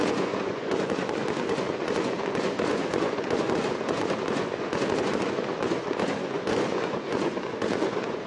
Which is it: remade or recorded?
remade